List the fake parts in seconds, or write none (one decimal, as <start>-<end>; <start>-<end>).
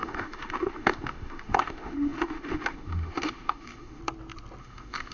0.0-4.0; 4.6-5.1